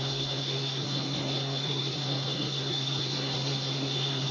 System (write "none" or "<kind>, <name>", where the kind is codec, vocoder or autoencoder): codec, SNAC